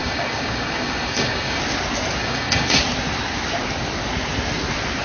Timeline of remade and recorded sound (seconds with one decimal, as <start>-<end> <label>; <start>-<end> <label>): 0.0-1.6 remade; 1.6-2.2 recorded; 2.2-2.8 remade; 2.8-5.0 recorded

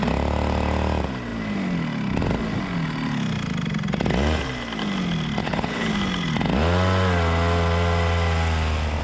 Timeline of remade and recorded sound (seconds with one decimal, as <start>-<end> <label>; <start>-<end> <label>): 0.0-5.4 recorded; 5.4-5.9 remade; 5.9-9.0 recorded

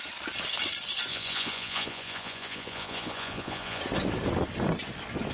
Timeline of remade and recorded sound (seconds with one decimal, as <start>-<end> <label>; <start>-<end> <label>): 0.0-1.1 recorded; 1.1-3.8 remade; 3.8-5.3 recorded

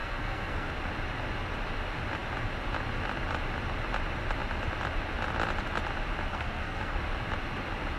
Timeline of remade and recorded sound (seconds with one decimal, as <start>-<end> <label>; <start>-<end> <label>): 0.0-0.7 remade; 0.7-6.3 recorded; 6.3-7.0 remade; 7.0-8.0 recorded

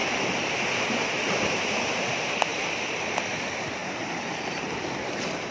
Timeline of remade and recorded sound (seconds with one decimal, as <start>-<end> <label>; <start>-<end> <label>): 0.0-0.5 remade; 0.5-2.5 recorded; 2.5-3.1 remade; 3.1-3.8 recorded; 3.8-5.5 remade

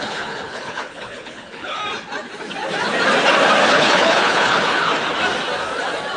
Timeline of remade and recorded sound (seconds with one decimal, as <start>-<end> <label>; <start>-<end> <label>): 0.0-1.8 remade; 1.8-3.7 recorded; 3.7-4.9 remade; 4.9-6.2 recorded

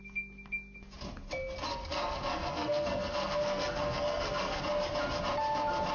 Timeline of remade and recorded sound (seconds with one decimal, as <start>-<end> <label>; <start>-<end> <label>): 0.0-1.7 recorded; 1.7-4.6 remade; 4.6-5.9 recorded